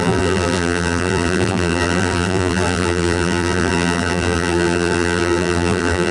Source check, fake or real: fake